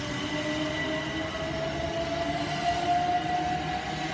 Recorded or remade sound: recorded